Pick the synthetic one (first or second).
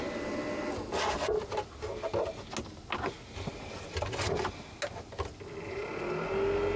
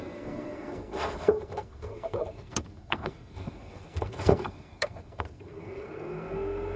second